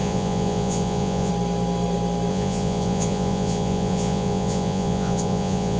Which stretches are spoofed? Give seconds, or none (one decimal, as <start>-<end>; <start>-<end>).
0.0-1.3; 2.3-5.8